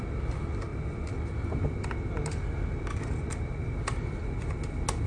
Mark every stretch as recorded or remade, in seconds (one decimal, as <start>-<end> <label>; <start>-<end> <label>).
0.0-5.1 recorded